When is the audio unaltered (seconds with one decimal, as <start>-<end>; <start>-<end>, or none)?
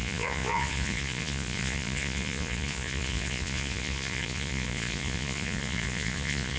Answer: none